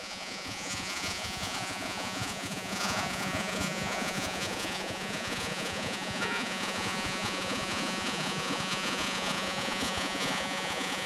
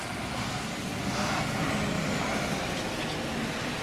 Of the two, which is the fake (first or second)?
first